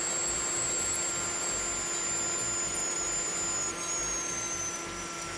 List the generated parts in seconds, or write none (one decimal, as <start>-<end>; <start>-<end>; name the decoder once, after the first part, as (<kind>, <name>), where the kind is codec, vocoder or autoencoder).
none